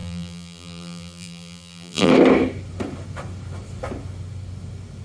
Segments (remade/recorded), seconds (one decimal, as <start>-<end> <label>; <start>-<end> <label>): 0.0-2.1 remade; 2.1-5.0 recorded